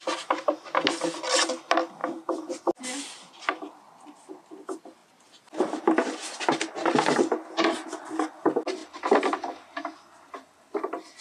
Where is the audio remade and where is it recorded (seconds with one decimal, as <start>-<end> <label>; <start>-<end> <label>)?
0.0-11.2 recorded